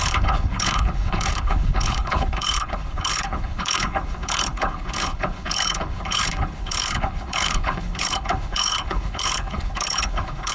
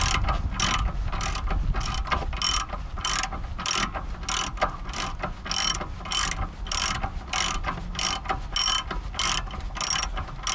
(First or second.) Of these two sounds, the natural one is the second